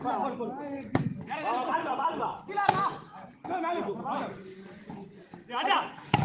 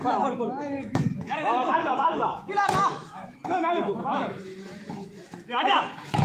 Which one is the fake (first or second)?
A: second